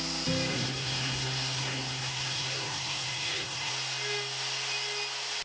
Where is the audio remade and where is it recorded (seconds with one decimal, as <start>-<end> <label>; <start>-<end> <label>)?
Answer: 0.0-0.5 recorded; 0.5-3.7 remade; 3.7-5.4 recorded